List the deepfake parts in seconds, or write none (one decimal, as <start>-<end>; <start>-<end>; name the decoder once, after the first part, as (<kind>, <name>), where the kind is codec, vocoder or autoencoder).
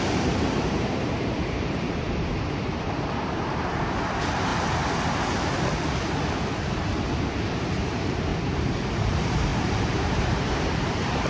0.0-4.5 (vocoder, BigVGAN v2); 7.3-11.3